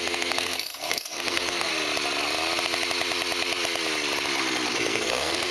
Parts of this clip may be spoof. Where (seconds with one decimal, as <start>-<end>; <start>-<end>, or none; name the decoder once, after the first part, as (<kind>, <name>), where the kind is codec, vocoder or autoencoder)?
0.0-1.7 (codec, SNAC); 4.7-5.5